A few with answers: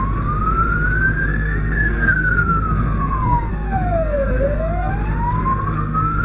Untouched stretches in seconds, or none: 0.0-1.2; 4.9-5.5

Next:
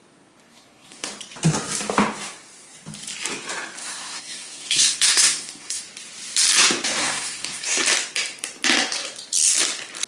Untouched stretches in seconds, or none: 0.0-0.5; 1.1-3.8; 5.8-7.0; 7.8-10.1

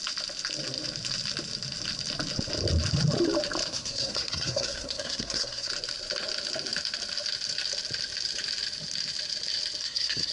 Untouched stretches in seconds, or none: 0.0-3.7; 5.7-9.8

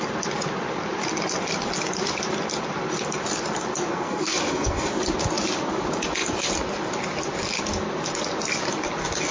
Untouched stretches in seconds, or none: 0.0-3.9; 4.9-9.3

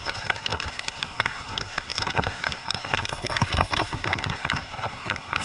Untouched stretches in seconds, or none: none

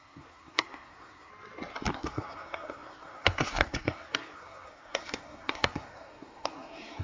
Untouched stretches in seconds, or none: 1.3-1.9

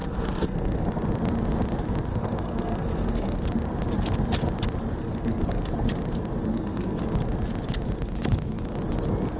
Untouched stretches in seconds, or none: 0.9-2.1; 3.4-5.0; 5.6-6.5; 7.0-9.4

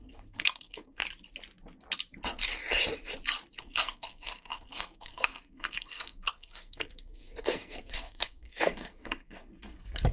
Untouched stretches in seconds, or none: 1.0-3.6